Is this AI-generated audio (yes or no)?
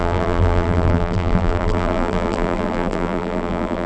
yes